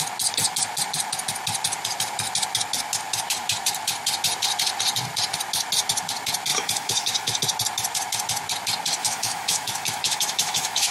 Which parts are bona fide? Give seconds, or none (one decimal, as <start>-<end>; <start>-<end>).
0.0-6.5; 7.4-9.0